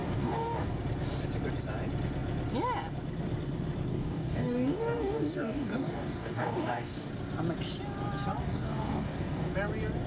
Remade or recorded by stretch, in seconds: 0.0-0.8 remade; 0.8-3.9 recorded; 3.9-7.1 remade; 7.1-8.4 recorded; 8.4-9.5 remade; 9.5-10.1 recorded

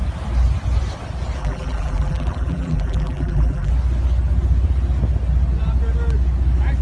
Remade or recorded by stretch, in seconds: 0.0-1.4 recorded; 1.4-3.7 remade; 3.7-6.8 recorded

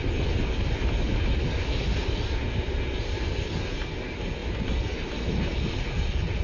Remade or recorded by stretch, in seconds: 0.0-6.4 recorded

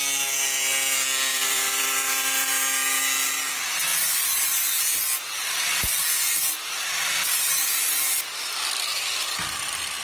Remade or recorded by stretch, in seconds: 0.0-1.3 recorded; 1.3-2.5 remade; 2.5-3.9 recorded; 3.9-8.2 remade; 8.2-8.9 recorded; 8.9-10.0 remade

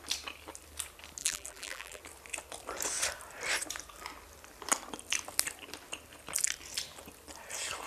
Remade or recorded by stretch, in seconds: 0.0-1.2 recorded; 1.2-2.0 remade; 2.0-7.9 recorded

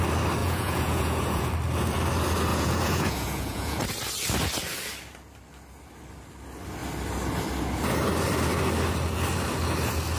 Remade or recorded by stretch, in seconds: 0.0-0.4 recorded; 0.4-1.5 remade; 1.5-2.5 recorded; 2.5-3.8 remade; 3.8-10.2 recorded

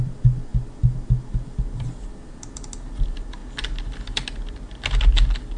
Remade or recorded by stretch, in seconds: 0.0-5.6 recorded